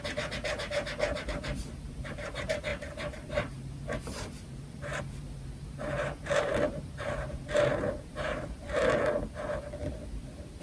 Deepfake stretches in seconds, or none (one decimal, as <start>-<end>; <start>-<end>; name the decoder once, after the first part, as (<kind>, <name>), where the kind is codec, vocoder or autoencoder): 0.0-8.8 (vocoder, BigVGAN v2); 9.9-10.6